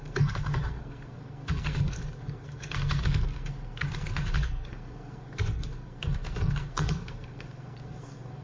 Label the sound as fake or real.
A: fake